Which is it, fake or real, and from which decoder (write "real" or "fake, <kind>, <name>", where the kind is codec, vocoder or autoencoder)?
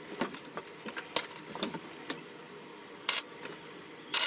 real